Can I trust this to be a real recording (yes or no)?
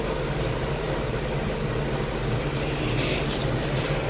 yes